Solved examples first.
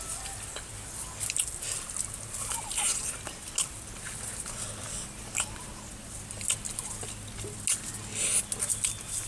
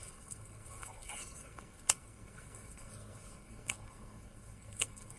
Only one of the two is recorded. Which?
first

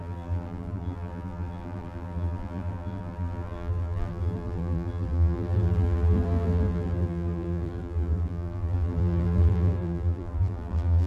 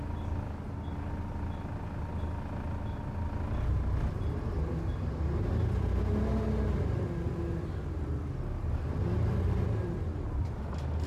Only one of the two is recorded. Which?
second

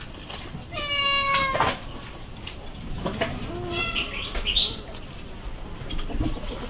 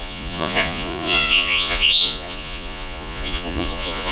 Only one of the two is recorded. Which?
first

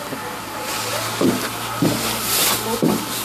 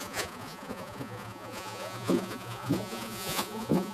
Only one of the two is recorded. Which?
first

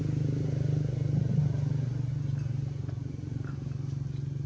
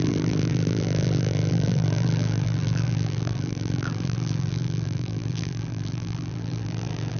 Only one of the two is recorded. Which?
first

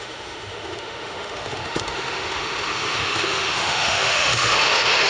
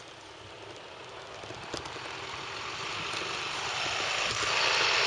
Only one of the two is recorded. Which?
second